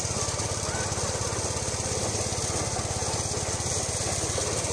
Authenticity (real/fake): real